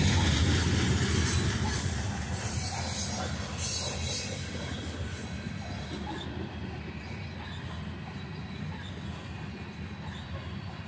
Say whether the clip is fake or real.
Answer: real